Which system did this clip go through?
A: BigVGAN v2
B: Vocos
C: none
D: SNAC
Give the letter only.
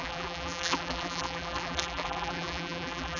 A